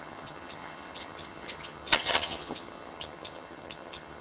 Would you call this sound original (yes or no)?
no